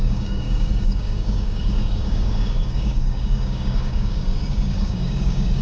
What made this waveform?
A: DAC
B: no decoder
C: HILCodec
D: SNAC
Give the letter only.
A